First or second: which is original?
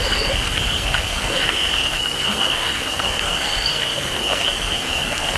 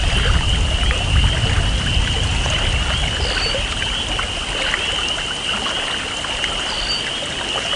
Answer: second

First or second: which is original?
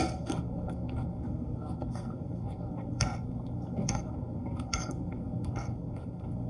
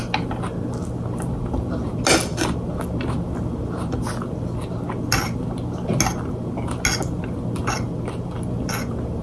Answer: second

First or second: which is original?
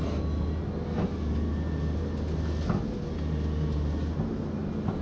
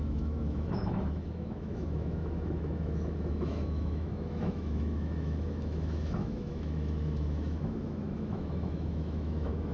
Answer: first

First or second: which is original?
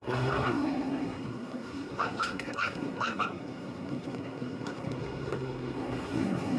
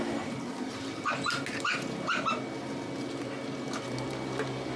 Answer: second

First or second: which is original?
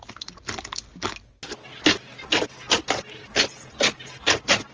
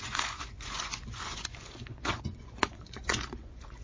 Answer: first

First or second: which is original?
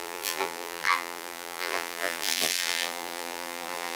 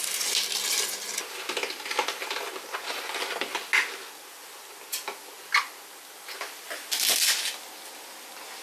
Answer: second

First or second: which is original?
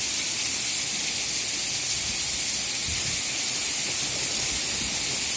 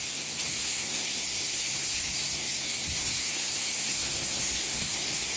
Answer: first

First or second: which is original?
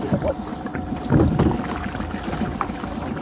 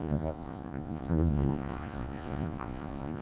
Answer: first